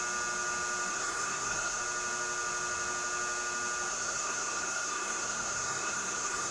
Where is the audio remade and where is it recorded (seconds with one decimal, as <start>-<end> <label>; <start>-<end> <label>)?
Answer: 0.0-0.9 recorded; 0.9-1.8 remade; 1.8-3.9 recorded; 3.9-6.5 remade